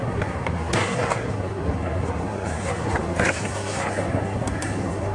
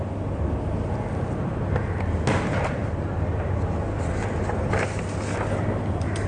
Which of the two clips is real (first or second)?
second